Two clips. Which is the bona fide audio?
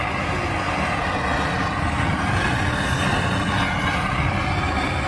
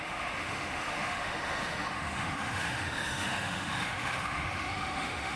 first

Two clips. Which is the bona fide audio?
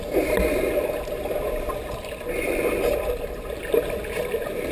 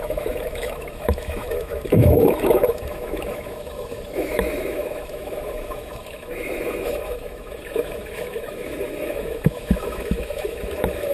first